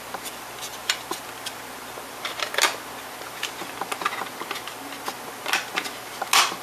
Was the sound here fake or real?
real